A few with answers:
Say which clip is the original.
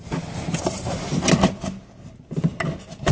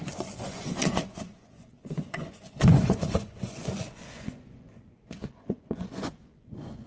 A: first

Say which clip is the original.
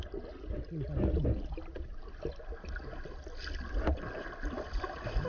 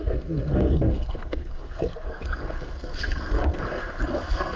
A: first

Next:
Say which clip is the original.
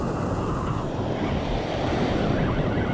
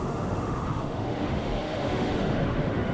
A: first